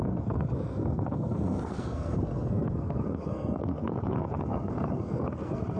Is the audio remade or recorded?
remade